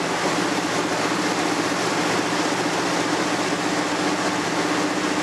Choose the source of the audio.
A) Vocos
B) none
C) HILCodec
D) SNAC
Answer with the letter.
B